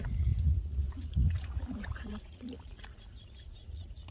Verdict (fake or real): fake